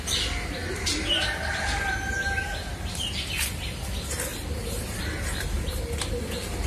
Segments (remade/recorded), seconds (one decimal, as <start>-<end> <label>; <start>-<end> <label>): 0.0-0.6 recorded; 0.6-3.1 remade; 3.1-6.7 recorded